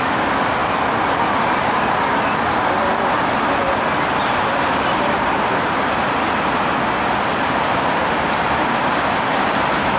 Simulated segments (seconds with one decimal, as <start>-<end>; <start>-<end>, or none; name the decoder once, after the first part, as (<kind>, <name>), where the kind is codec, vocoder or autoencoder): none